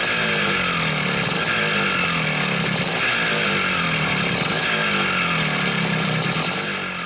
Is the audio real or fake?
real